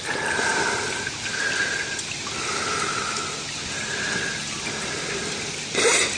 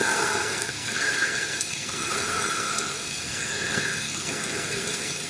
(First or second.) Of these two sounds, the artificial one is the second